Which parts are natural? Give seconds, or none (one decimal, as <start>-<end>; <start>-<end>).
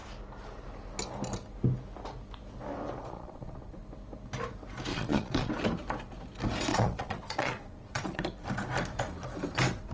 0.0-3.0; 3.8-4.9; 5.5-6.7; 8.2-9.9